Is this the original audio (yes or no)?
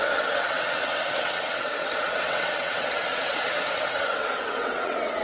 no